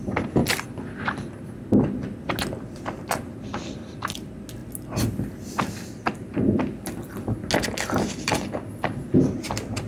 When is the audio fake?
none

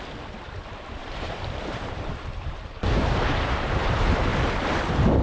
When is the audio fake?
1.0-3.9 (vocoder, BigVGAN v2)